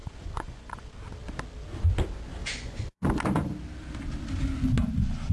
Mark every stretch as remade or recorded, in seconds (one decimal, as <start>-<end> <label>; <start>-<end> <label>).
0.0-0.9 remade; 0.9-2.4 recorded; 2.4-3.1 remade; 3.1-5.3 recorded